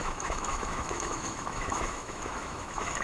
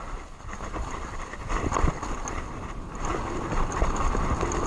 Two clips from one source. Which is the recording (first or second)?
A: second